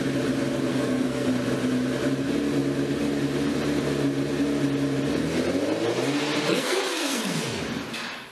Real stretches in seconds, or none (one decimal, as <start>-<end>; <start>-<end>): 0.0-0.7; 1.3-6.5; 7.6-8.3